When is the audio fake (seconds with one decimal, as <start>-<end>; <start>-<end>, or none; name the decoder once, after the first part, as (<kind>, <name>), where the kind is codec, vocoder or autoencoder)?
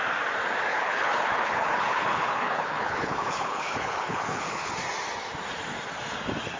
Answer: 0.7-4.7 (codec, HILCodec)